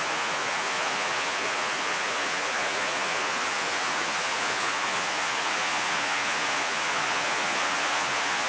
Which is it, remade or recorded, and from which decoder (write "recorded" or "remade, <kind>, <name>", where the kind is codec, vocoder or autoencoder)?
remade, vocoder, Vocos